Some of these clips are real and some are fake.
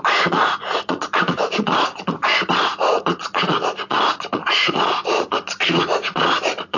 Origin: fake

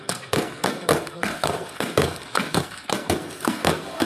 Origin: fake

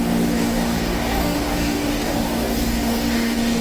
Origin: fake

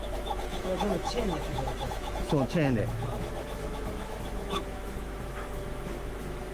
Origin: fake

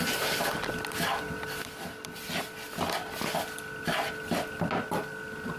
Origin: real